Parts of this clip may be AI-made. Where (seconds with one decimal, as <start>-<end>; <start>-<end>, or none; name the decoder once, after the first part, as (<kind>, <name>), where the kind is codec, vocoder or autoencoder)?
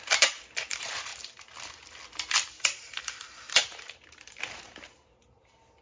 0.0-1.1 (vocoder, BigVGAN v2); 3.0-5.8